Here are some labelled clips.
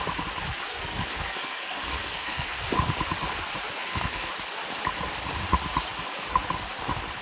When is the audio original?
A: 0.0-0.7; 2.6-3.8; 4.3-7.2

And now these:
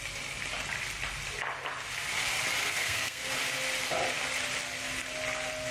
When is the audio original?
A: 0.0-2.6; 3.3-5.7

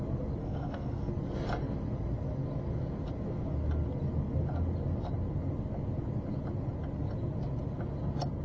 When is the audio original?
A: 0.0-0.4; 1.1-8.4

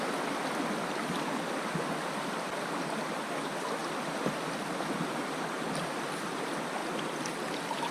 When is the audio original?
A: 0.0-7.9

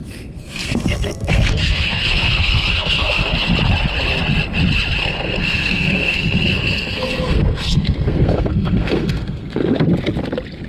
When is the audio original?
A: 3.3-5.0; 9.8-10.7

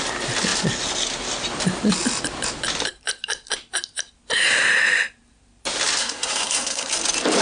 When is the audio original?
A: 0.0-6.0; 6.9-7.4

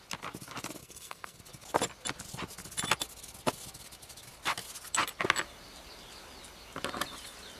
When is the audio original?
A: 0.0-0.8; 1.4-7.6

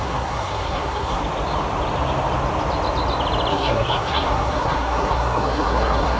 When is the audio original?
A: 1.2-3.5